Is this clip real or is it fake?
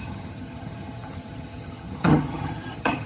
fake